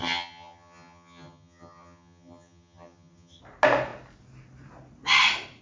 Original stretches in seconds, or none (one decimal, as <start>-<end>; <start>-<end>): 3.4-5.6